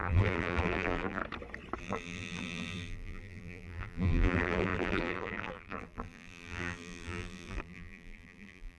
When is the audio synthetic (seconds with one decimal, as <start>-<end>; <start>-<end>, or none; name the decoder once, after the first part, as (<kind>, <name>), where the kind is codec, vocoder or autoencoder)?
0.0-1.2 (vocoder, BigVGAN v2); 1.8-8.8